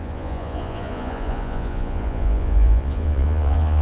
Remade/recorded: remade